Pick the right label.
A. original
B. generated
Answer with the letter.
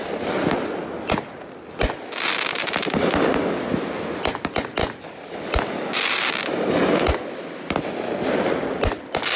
A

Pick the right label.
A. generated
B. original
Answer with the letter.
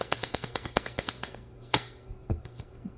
A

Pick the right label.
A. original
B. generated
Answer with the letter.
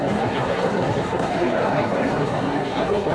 B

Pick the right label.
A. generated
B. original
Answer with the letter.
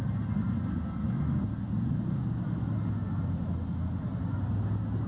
B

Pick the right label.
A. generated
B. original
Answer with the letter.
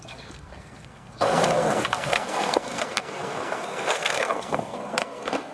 A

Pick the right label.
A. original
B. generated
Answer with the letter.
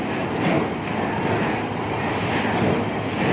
A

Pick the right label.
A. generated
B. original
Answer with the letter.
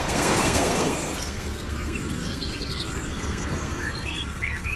A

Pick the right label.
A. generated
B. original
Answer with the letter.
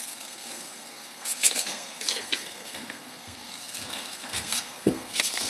A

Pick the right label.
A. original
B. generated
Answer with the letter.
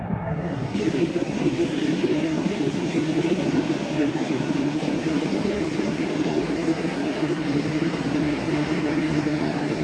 B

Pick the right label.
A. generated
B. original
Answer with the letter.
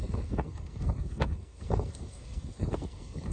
A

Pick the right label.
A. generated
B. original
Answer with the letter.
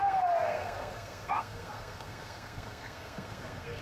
A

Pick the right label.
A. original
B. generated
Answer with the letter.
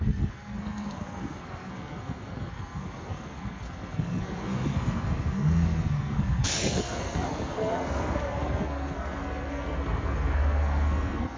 B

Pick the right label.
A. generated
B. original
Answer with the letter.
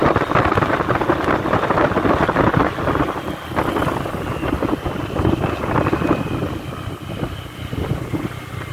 B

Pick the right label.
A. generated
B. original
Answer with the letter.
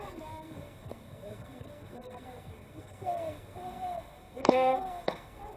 A